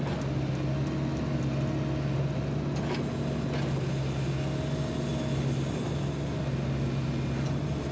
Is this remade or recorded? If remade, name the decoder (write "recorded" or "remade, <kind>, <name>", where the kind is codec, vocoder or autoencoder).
recorded